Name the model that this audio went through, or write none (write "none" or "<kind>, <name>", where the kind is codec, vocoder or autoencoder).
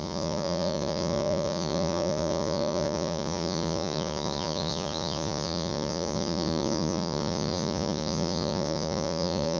vocoder, Vocos